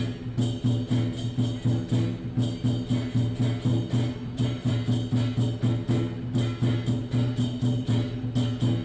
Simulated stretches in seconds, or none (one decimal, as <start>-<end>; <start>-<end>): 3.7-4.7; 7.0-8.2